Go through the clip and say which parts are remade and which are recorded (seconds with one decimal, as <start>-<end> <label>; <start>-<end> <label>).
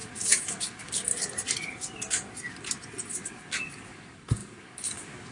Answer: 0.0-1.1 remade; 1.1-3.1 recorded; 3.1-5.3 remade